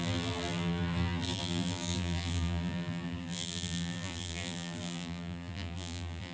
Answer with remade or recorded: remade